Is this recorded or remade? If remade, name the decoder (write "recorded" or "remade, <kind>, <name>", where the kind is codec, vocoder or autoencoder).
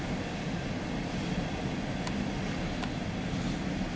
recorded